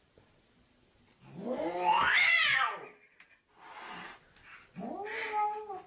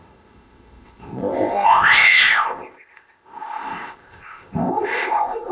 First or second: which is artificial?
second